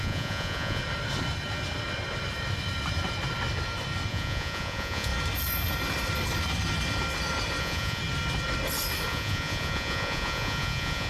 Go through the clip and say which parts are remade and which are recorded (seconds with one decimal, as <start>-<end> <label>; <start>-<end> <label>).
0.0-0.8 remade; 0.8-4.1 recorded; 4.1-5.1 remade; 5.1-7.6 recorded; 7.6-8.0 remade; 8.0-9.1 recorded; 9.1-11.1 remade